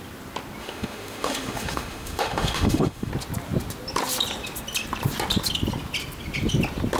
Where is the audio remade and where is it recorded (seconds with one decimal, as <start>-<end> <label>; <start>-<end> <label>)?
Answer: 0.0-0.6 recorded; 0.6-3.1 remade; 3.1-7.0 recorded